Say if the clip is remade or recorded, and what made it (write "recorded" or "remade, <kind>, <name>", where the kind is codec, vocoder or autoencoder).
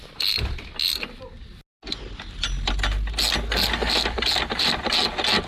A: recorded